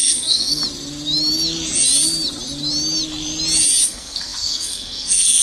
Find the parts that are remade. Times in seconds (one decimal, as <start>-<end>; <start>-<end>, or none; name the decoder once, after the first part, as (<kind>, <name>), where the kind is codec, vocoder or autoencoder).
0.0-0.6 (codec, SNAC); 3.8-5.4